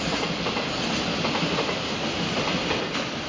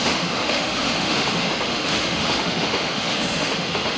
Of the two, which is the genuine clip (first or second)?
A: first